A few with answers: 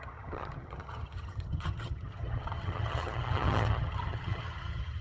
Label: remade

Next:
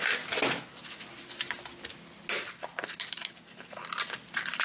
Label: recorded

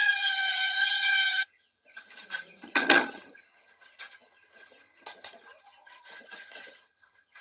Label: remade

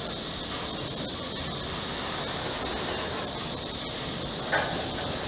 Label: recorded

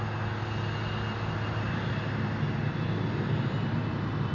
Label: recorded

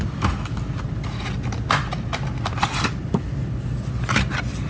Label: recorded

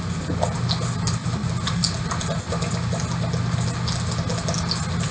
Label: recorded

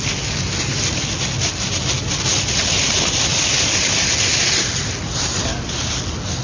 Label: recorded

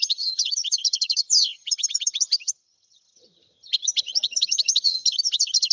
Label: remade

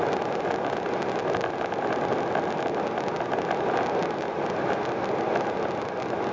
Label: recorded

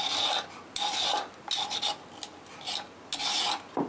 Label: recorded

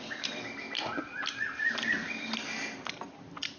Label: recorded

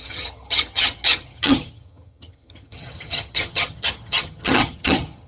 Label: remade